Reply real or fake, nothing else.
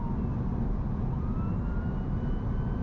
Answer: fake